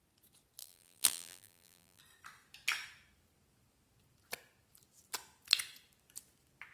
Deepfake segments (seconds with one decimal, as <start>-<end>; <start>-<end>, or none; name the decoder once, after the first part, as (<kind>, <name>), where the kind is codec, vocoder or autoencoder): 0.6-2.0 (vocoder, BigVGAN v2)